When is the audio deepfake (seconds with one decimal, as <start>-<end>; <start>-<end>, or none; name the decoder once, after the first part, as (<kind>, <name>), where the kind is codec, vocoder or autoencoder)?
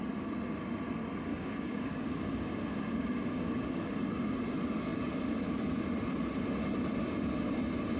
1.3-3.9 (codec, DAC)